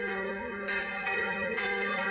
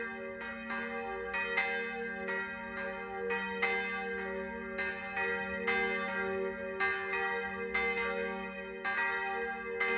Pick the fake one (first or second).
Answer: first